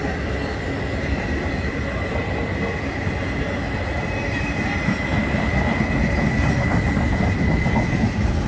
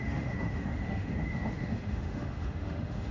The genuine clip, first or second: first